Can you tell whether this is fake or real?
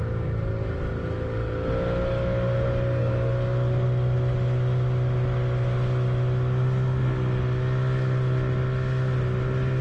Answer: real